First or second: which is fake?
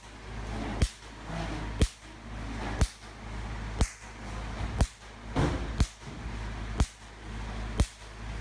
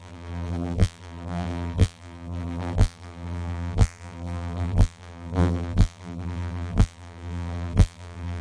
second